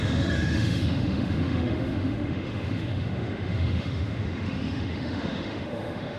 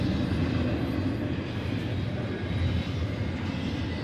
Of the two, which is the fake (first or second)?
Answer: first